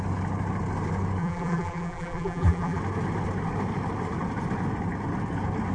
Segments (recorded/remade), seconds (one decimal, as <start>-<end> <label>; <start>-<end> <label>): 0.0-1.2 recorded; 1.2-2.8 remade; 2.8-5.7 recorded